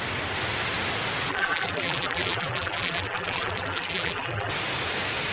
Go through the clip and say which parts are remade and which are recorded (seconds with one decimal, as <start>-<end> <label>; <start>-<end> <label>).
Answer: 0.0-1.3 recorded; 1.3-4.5 remade; 4.5-5.3 recorded